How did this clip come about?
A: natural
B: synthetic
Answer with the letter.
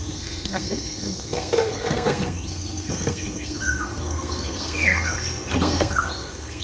B